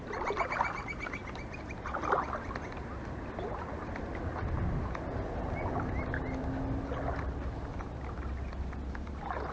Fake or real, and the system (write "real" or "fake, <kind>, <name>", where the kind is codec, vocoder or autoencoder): real